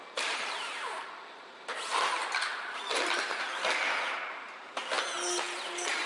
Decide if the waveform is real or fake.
real